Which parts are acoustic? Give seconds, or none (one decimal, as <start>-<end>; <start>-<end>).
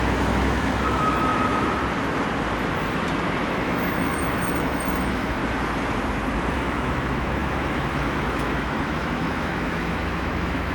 1.3-3.5; 5.4-6.5